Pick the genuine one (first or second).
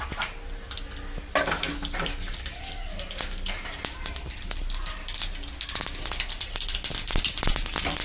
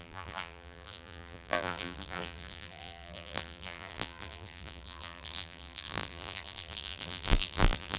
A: first